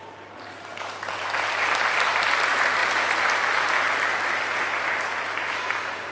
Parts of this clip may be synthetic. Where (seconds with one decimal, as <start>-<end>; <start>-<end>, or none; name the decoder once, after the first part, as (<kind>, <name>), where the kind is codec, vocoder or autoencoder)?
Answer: none